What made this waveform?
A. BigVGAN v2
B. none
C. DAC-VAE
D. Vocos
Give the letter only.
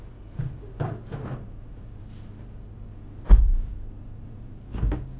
B